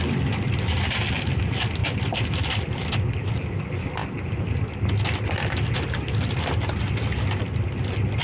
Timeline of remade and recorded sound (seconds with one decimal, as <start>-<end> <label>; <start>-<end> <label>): 0.0-8.2 recorded